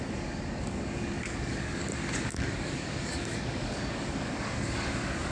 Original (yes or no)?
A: no